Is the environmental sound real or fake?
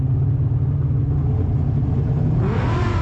real